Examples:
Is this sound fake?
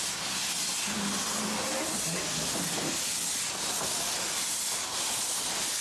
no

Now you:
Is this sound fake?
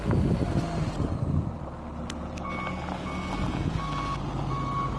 no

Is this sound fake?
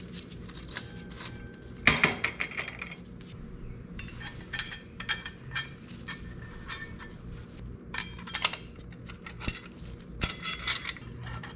no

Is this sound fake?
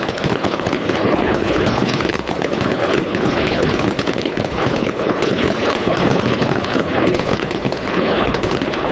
yes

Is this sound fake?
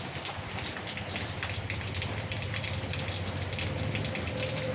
no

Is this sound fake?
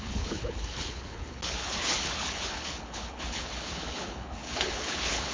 yes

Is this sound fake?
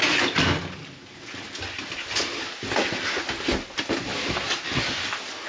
no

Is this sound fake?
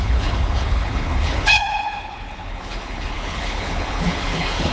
yes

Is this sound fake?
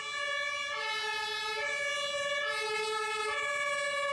no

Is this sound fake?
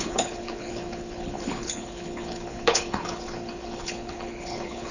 yes